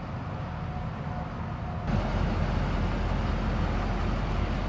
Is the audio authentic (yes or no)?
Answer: yes